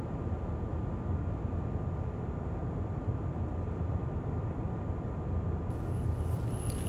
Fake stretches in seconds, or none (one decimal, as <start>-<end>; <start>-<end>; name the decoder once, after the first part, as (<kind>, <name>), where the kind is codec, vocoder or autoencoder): 2.6-5.2 (vocoder, BigVGAN v2)